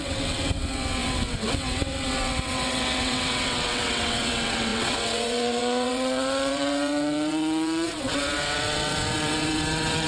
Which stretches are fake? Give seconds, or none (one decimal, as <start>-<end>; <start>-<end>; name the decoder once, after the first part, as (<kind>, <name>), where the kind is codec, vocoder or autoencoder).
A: 0.0-10.1 (vocoder, WaveNeXt)